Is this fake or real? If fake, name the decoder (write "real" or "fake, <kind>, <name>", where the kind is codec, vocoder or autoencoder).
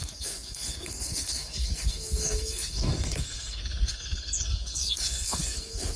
fake, codec, SNAC